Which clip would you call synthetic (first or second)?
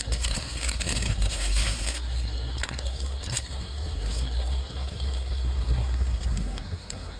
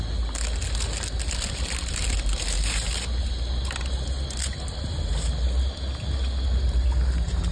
first